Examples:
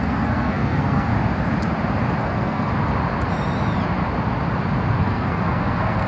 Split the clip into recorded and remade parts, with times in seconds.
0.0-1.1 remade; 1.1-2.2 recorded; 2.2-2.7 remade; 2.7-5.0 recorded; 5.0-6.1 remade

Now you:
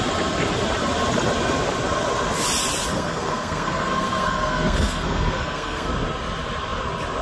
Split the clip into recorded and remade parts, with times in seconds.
0.0-2.9 recorded; 2.9-5.9 remade; 5.9-7.2 recorded

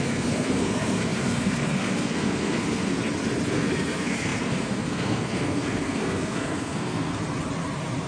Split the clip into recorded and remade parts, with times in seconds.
0.0-3.0 remade; 3.0-3.5 recorded; 3.5-7.2 remade; 7.2-8.1 recorded